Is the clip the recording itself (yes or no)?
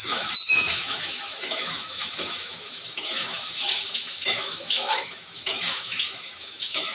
no